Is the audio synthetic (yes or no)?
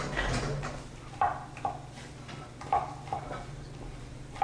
no